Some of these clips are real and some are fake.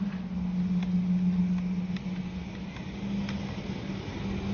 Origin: real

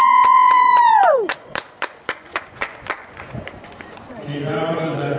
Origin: fake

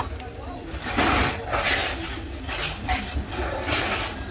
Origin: real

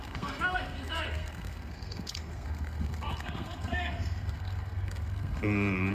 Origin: fake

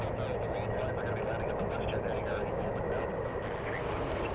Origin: real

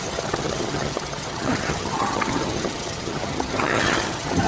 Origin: fake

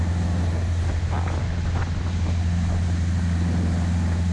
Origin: real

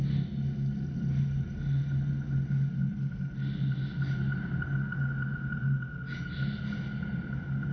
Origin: real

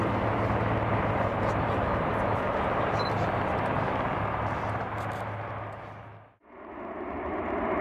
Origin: real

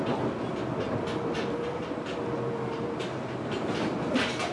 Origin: real